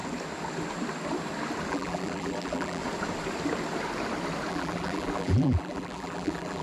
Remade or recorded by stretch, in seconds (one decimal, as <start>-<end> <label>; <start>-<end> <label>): 0.0-1.7 recorded; 1.7-2.8 remade; 2.8-4.5 recorded; 4.5-6.6 remade

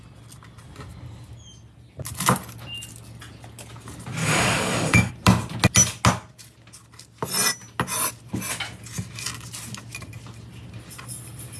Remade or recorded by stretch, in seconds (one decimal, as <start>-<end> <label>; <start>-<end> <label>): 0.0-4.2 recorded; 4.2-5.1 remade; 5.1-11.6 recorded

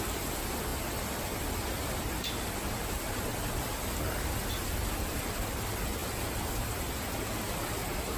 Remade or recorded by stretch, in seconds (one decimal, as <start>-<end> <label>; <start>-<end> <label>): 0.0-8.2 recorded